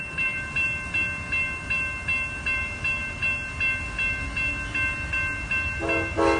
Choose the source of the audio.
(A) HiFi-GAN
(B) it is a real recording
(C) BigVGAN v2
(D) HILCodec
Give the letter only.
B